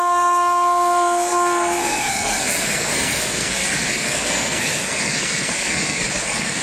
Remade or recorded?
remade